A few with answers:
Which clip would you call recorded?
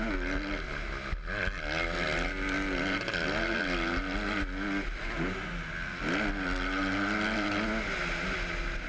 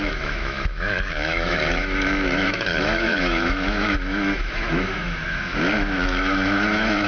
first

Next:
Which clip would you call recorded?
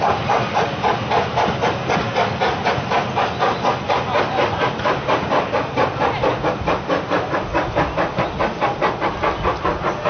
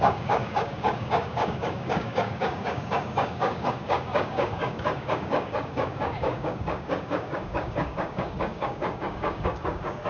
first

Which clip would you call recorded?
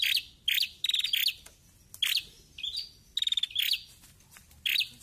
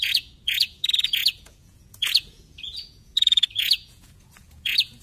first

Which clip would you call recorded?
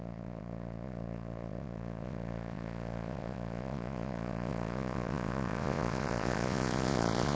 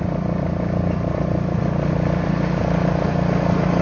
second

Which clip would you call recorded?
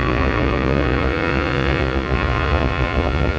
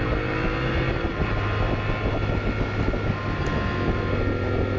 second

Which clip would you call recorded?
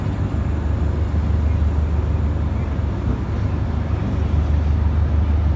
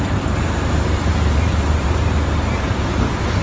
first